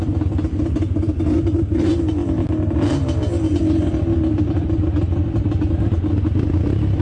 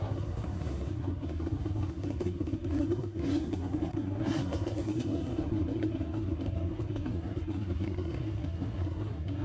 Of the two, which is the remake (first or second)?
second